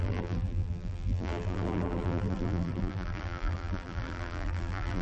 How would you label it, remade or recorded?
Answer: remade